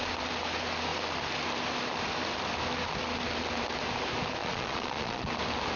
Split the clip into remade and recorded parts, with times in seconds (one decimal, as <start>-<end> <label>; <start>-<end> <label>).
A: 0.0-4.4 recorded; 4.4-5.3 remade; 5.3-5.8 recorded

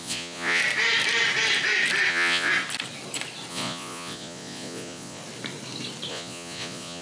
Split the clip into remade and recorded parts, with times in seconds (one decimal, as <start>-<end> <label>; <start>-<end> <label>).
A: 0.0-0.6 remade; 0.6-2.1 recorded; 2.1-2.5 remade; 2.5-3.5 recorded; 3.5-5.2 remade; 5.2-6.1 recorded; 6.1-7.0 remade

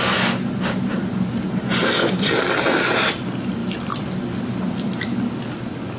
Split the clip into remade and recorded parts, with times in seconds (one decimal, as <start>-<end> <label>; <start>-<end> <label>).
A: 0.0-1.8 recorded; 1.8-2.3 remade; 2.3-6.0 recorded

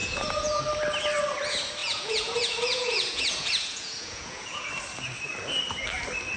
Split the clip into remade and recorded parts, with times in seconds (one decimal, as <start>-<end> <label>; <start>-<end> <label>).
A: 0.0-0.6 remade; 0.6-1.8 recorded; 1.8-4.7 remade; 4.7-6.4 recorded

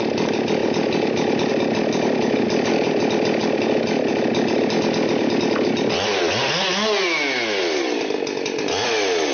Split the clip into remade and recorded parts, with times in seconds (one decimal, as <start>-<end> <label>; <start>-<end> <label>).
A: 0.0-9.3 recorded

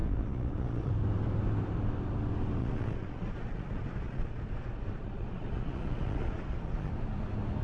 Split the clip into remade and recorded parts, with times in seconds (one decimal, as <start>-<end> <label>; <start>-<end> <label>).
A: 0.0-0.9 remade; 0.9-2.6 recorded; 2.6-6.9 remade; 6.9-7.6 recorded

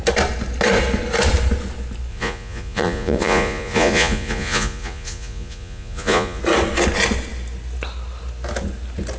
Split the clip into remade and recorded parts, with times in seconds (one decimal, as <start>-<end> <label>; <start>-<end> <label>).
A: 0.0-2.1 recorded; 2.1-6.4 remade; 6.4-9.2 recorded